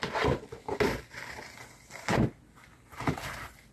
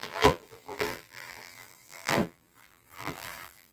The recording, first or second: first